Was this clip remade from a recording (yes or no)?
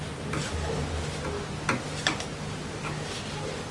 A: no